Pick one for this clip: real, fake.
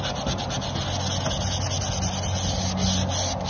real